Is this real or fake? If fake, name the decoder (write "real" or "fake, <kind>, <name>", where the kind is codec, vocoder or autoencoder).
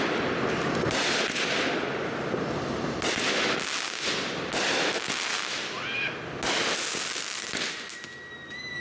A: real